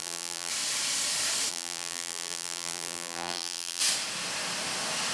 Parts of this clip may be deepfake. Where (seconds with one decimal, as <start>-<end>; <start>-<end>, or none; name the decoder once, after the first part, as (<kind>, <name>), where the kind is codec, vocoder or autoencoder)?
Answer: 0.0-0.5 (vocoder, BigVGAN v2); 1.5-3.8